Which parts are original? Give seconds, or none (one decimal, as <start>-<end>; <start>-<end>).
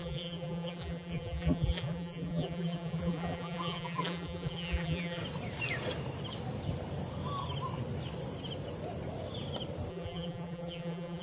5.2-9.9